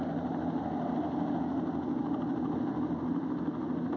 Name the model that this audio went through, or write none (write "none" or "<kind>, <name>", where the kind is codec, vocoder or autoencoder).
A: none